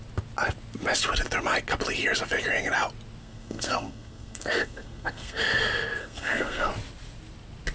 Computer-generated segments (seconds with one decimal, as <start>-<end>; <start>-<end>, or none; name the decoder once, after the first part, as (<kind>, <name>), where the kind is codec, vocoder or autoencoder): 3.2-5.4 (codec, SNAC); 6.0-6.7